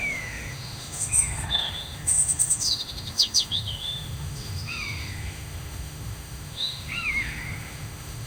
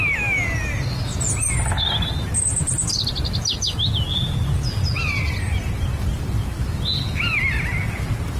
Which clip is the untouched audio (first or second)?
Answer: second